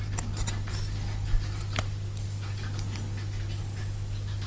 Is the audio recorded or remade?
recorded